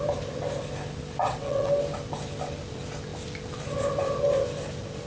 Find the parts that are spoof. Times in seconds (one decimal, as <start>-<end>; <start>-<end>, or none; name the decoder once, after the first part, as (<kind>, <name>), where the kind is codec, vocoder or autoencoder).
1.2-1.7 (vocoder, WaveNeXt)